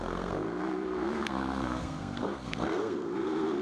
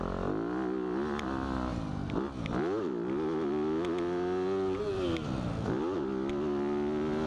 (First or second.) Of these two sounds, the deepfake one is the first